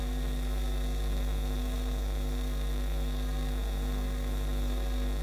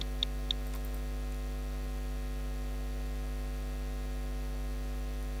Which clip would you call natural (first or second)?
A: second